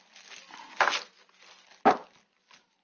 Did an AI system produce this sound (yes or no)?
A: no